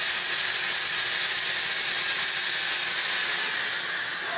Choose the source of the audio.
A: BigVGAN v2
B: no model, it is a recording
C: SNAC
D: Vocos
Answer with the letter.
B